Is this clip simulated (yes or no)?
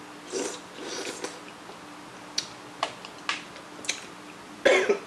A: no